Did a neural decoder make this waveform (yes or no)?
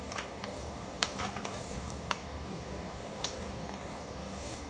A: yes